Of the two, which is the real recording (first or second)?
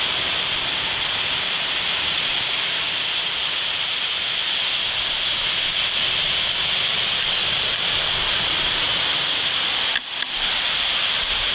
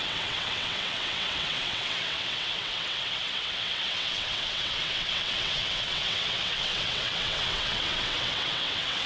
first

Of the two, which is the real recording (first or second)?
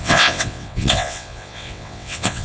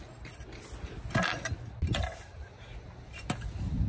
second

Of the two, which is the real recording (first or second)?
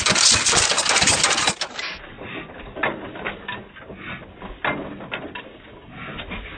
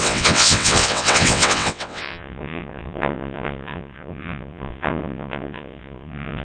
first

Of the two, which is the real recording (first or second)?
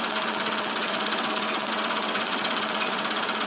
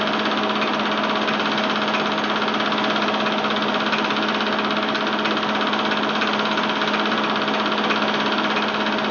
second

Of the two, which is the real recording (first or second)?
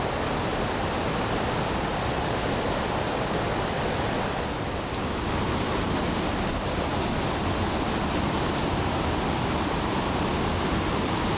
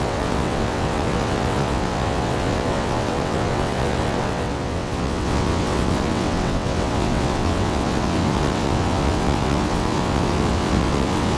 first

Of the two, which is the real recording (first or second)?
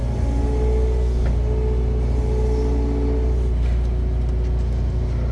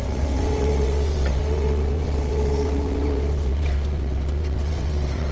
first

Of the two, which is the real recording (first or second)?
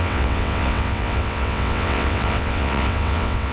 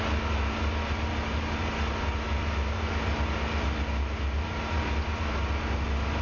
second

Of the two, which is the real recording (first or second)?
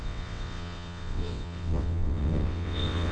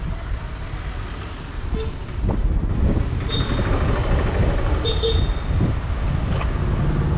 second